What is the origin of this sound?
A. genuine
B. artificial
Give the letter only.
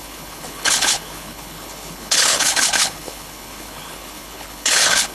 B